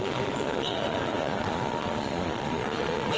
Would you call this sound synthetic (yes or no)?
yes